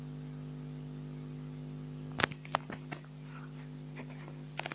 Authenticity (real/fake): real